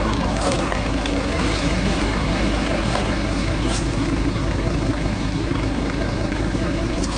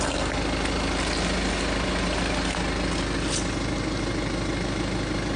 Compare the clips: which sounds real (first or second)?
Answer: second